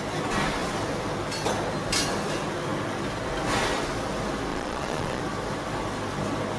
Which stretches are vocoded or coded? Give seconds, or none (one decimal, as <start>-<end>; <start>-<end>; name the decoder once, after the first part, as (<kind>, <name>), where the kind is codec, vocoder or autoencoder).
4.5-5.2 (vocoder, Vocos)